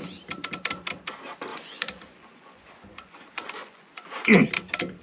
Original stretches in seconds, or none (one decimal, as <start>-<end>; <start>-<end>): 0.0-1.5; 4.5-5.0